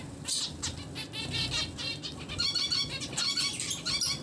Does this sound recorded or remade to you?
recorded